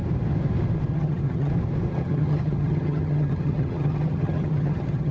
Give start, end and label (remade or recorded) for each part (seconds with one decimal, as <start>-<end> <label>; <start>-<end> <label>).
0.0-0.9 recorded; 0.9-1.5 remade; 1.5-1.9 recorded; 1.9-5.1 remade